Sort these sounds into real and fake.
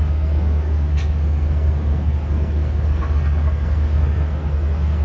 fake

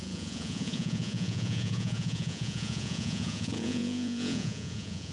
fake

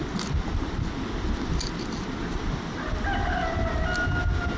real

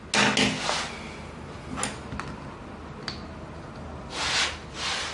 real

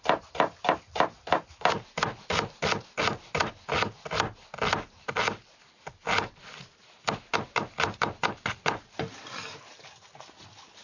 real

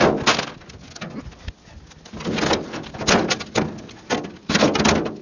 real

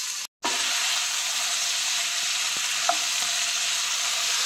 real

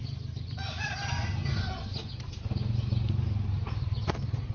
real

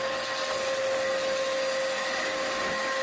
real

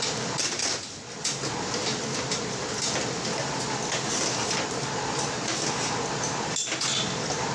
real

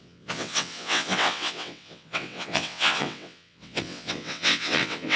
fake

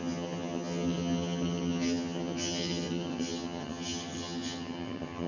fake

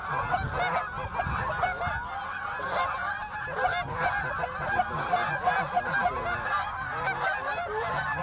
real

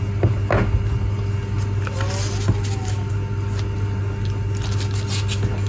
real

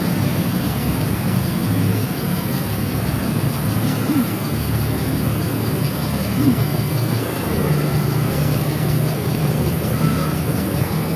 fake